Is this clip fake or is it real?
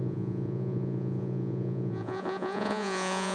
fake